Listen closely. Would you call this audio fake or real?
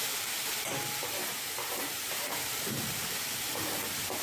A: fake